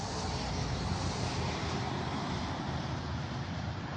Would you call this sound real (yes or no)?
no